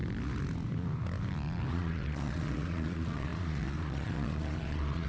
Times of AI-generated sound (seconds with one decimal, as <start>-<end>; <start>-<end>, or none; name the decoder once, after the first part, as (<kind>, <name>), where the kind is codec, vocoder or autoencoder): 1.7-5.1 (vocoder, Vocos)